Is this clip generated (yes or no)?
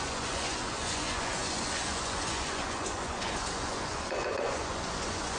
yes